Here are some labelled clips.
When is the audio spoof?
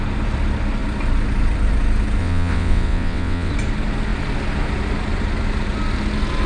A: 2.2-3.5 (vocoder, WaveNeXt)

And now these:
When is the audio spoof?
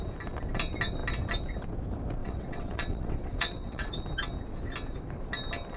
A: 2.2-3.9 (vocoder, WaveNeXt)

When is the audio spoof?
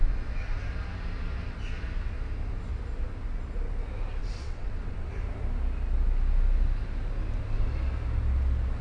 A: 4.2-5.1 (vocoder, WaveNeXt)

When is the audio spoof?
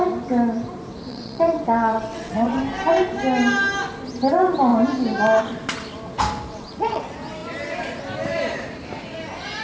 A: 1.1-2.6 (vocoder, WaveNeXt); 6.5-7.0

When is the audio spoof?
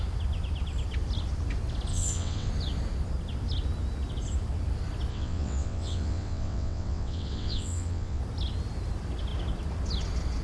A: 1.9-2.5 (vocoder, WaveNeXt); 5.1-8.2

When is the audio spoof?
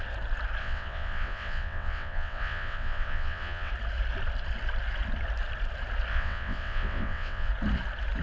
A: 0.6-3.7 (vocoder, WaveNeXt); 6.1-7.5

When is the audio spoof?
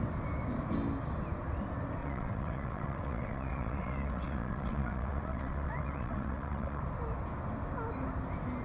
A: 2.0-6.8 (vocoder, WaveNeXt)